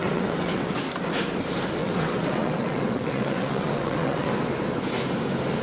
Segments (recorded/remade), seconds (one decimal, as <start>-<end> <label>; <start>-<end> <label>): 0.0-0.7 remade; 0.7-1.8 recorded; 1.8-4.3 remade; 4.3-5.6 recorded

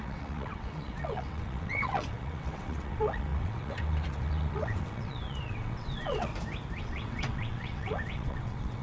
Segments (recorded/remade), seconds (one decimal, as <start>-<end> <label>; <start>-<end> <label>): 0.0-6.3 remade; 6.3-6.8 recorded; 6.8-8.8 remade